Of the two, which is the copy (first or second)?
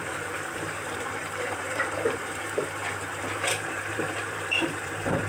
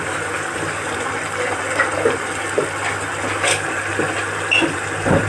first